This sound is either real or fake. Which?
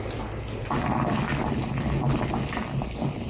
real